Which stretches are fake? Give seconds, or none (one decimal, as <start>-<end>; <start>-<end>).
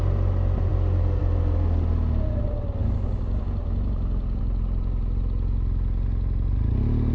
none